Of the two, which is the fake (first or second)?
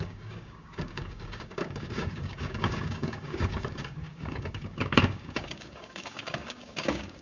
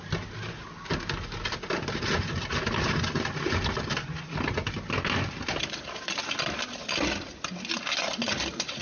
first